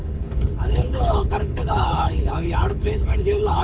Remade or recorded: remade